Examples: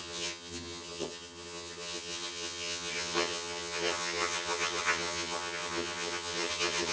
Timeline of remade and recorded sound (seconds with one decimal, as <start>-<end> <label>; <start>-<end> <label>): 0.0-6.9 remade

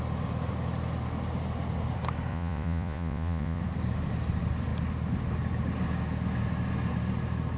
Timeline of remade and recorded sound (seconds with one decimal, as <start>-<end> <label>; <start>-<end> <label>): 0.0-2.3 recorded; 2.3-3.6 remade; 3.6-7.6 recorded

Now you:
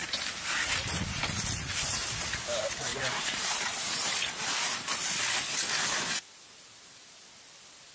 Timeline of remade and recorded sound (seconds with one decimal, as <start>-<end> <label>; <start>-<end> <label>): 0.0-7.9 recorded

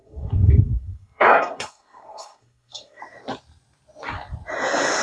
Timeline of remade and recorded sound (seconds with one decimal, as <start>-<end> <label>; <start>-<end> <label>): 0.0-3.0 remade; 3.0-5.0 recorded

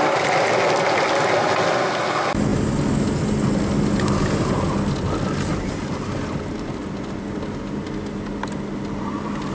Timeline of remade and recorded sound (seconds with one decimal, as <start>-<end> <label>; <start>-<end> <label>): 0.0-9.5 recorded

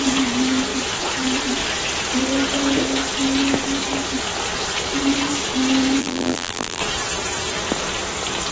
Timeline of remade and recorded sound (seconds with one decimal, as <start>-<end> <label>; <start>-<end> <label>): 0.0-6.0 recorded; 6.0-6.8 remade; 6.8-8.5 recorded

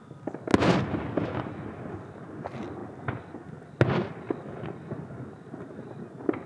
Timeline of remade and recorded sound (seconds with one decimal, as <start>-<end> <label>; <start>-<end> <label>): 0.0-6.5 recorded

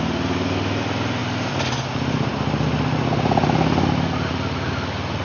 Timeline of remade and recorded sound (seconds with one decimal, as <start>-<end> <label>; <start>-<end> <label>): 0.0-5.2 recorded